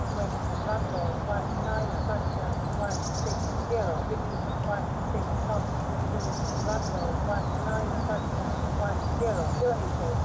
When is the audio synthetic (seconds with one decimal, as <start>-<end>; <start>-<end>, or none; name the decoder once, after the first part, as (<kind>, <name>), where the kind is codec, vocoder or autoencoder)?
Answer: 8.3-9.0 (vocoder, Vocos)